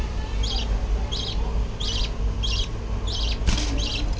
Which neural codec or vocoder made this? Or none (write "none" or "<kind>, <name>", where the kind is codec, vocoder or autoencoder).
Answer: none